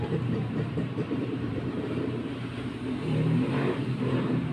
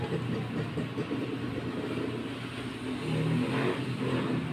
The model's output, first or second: first